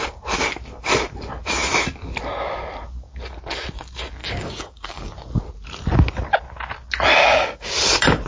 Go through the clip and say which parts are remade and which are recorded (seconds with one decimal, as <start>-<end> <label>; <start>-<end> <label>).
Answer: 0.0-4.2 recorded; 4.2-5.1 remade; 5.1-7.2 recorded; 7.2-7.7 remade; 7.7-8.3 recorded